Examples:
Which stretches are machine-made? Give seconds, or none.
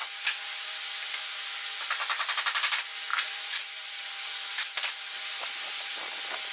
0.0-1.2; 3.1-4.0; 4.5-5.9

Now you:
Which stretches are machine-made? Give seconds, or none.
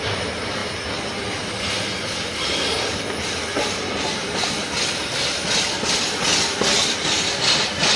none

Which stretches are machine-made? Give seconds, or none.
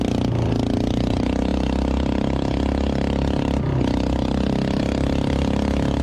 none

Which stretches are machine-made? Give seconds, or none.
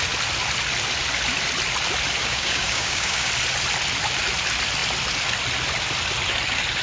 2.2-3.3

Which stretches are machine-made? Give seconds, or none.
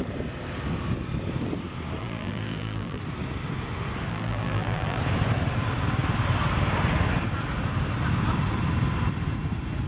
2.0-3.0; 4.1-5.0